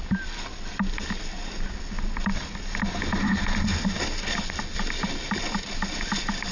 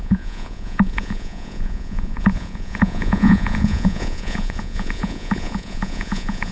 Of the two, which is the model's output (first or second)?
second